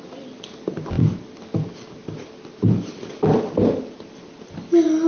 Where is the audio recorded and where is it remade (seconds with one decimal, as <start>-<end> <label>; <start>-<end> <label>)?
0.0-5.1 recorded